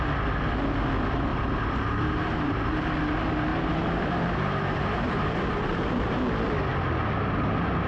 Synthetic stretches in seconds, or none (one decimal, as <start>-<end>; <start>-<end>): 1.3-3.0; 3.5-6.2